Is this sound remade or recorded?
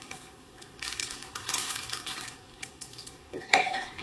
remade